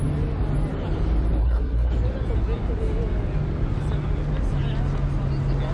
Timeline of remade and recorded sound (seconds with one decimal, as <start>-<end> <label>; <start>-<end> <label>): 0.0-1.4 recorded; 1.4-1.9 remade; 1.9-5.7 recorded